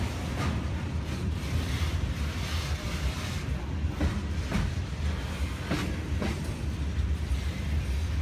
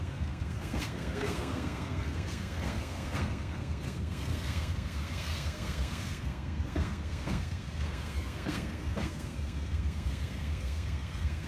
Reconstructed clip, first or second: second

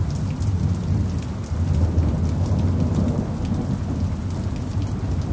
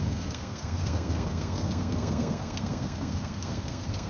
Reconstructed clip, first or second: second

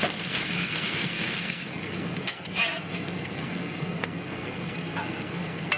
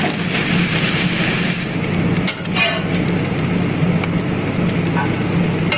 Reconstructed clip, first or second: first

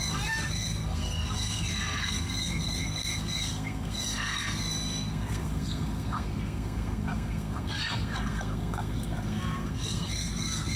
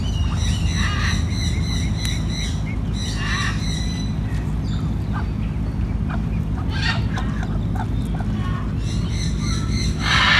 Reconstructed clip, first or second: first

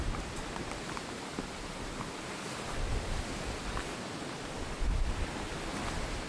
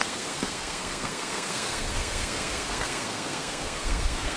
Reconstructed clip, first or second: second